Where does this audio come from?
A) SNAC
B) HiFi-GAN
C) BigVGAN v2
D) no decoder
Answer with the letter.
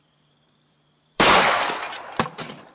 C